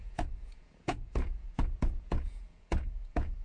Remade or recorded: remade